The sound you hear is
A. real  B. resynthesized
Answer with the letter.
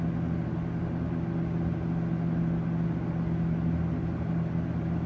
A